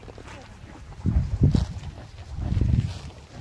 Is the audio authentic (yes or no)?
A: yes